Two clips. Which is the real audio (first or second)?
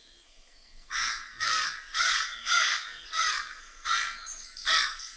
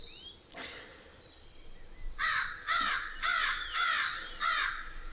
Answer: second